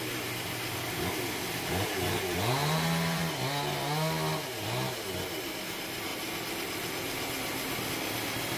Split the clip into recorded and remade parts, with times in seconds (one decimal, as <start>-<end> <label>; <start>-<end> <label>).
0.0-2.6 recorded; 2.6-3.2 remade; 3.2-8.6 recorded